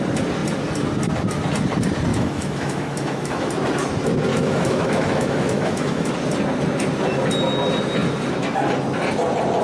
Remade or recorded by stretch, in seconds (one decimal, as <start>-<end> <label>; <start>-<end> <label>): 0.0-2.1 recorded; 2.1-3.5 remade; 3.5-4.3 recorded; 4.3-6.1 remade; 6.1-9.6 recorded